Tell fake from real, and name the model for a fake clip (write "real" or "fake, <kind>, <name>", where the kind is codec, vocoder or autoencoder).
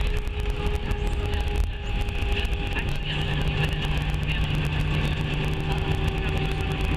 real